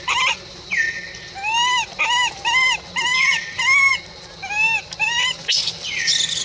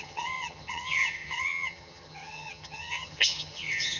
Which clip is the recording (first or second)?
first